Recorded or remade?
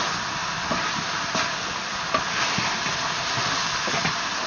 recorded